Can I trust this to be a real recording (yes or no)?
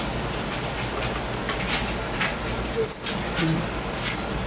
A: yes